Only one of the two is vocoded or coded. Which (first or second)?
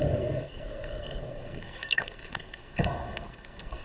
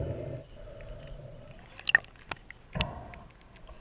first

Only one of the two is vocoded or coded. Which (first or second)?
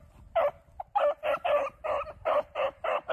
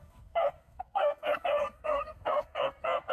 second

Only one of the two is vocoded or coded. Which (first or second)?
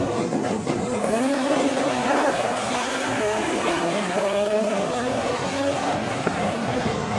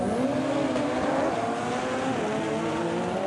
first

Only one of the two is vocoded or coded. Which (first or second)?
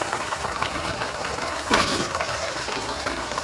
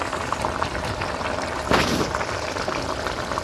first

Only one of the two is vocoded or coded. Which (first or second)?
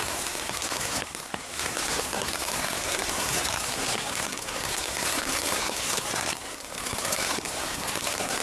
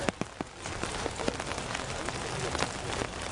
first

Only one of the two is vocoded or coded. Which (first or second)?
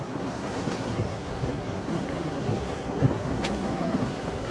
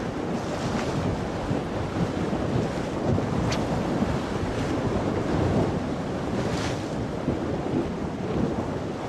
first